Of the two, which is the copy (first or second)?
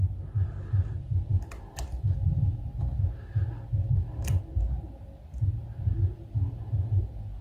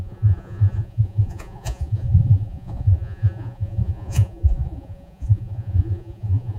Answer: second